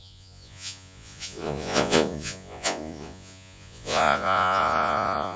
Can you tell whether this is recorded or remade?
remade